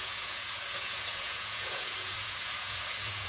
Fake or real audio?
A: fake